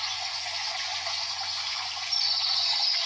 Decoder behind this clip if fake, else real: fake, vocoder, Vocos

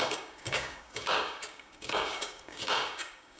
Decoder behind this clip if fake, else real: fake, codec, DAC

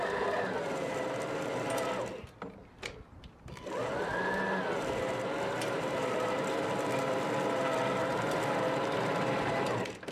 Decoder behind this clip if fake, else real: real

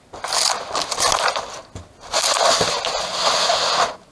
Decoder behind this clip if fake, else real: real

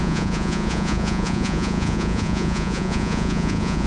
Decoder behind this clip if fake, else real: fake, vocoder, Vocos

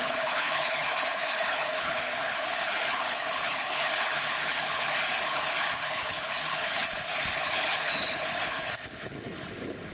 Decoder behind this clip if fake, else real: fake, codec, HILCodec